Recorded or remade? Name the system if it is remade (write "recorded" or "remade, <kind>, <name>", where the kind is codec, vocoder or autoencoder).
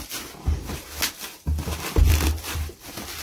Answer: recorded